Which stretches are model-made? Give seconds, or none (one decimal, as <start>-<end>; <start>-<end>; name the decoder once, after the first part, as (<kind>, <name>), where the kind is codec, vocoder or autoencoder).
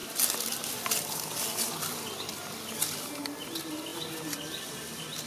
none